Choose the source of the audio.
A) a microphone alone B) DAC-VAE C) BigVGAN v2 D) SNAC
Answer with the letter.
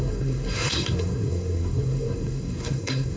D